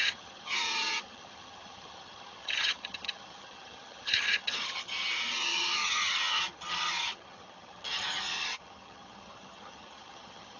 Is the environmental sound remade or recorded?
remade